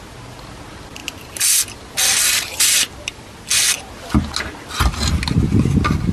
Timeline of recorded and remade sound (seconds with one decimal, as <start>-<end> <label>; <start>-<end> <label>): 0.0-6.1 recorded